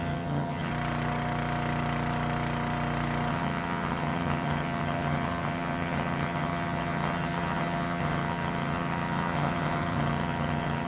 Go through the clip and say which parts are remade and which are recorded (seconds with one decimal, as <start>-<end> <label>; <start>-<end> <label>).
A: 0.0-0.7 remade; 0.7-3.3 recorded; 3.3-10.9 remade